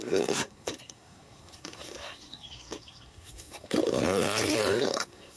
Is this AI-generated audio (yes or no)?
yes